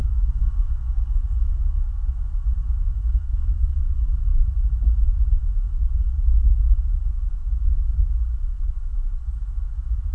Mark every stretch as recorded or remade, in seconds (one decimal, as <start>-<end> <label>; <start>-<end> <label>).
0.0-0.7 remade; 0.7-3.0 recorded; 3.0-3.8 remade; 3.8-10.1 recorded